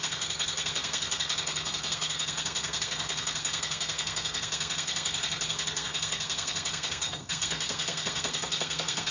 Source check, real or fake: fake